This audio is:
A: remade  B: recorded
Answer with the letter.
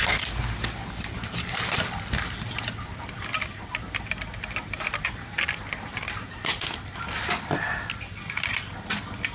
B